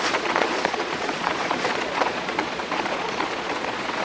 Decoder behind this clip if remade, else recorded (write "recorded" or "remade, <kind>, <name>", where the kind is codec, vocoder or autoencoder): remade, vocoder, Vocos